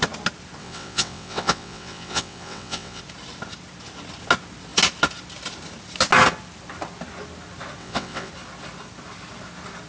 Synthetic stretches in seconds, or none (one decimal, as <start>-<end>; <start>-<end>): 0.6-3.0; 7.8-8.3